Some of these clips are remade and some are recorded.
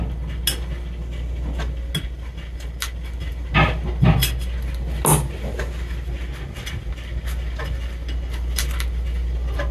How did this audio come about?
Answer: recorded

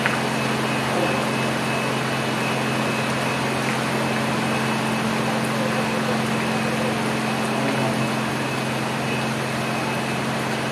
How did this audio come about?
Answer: recorded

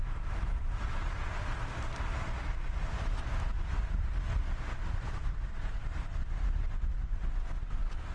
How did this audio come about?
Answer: recorded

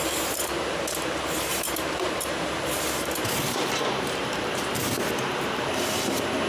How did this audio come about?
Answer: remade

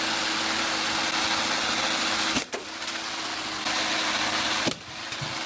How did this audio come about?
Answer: recorded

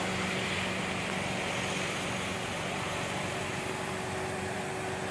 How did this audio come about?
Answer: recorded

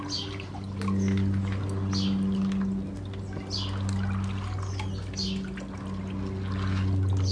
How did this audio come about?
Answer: recorded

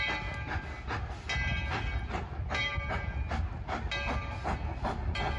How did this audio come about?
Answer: recorded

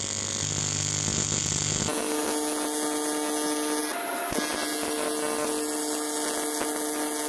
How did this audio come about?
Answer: recorded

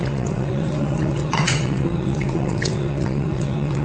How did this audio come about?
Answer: remade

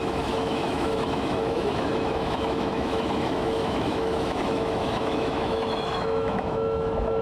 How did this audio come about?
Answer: remade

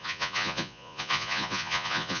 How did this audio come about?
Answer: remade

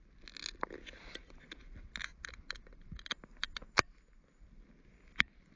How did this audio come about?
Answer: recorded